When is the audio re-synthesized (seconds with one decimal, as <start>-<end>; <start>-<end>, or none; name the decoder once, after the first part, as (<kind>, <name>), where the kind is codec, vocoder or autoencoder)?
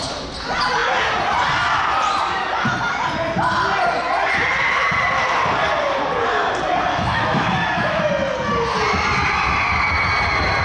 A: 6.9-8.1 (autoencoder, DAC-VAE)